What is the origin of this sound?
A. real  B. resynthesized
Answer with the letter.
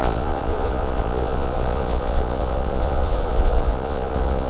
B